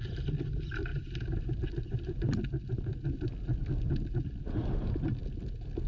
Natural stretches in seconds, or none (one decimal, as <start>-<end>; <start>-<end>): 0.0-5.9